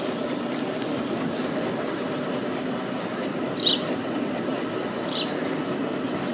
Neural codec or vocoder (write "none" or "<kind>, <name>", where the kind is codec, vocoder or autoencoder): none